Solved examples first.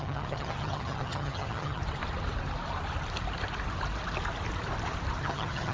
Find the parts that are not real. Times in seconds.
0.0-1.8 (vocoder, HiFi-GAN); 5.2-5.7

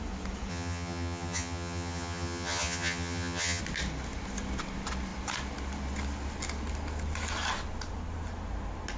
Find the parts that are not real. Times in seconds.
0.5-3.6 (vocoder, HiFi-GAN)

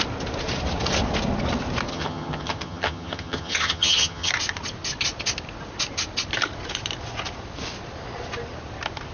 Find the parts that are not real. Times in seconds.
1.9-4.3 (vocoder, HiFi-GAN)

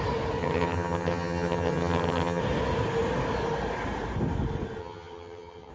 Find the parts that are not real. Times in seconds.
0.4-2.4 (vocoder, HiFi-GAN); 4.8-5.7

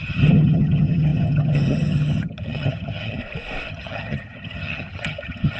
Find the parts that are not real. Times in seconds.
0.0-3.2 (vocoder, HiFi-GAN); 3.7-5.6

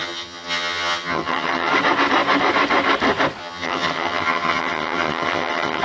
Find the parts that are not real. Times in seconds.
0.0-1.7 (vocoder, HiFi-GAN); 3.4-5.8